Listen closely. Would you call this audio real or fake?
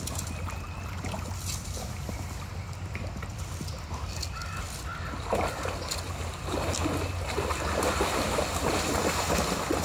real